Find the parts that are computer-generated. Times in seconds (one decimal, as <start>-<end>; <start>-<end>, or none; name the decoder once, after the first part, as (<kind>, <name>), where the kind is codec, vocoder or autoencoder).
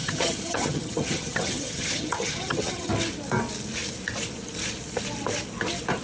0.0-2.9 (vocoder, HiFi-GAN)